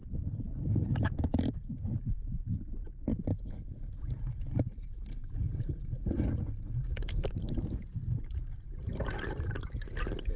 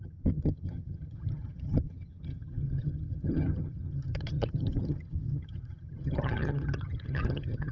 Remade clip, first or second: second